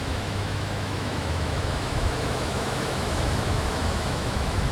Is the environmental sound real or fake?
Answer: fake